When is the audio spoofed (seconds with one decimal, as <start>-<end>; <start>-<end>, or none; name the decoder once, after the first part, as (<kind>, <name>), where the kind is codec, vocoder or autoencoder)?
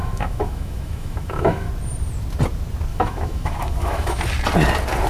0.0-1.7 (autoencoder, DAC-VAE); 2.9-4.2